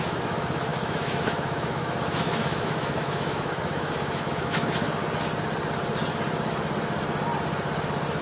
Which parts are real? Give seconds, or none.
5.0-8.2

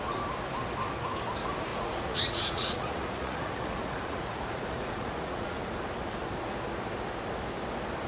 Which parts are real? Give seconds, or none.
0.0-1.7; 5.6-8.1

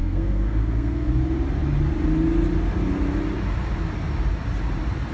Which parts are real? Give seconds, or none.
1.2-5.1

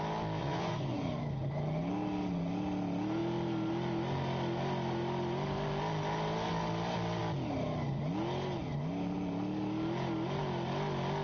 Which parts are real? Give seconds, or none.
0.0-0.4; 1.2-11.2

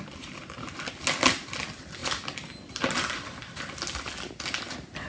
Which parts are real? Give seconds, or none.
0.0-5.1

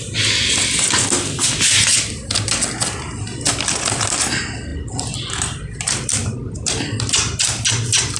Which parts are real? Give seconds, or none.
0.0-4.7

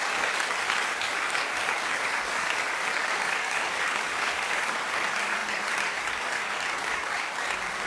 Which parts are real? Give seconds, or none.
none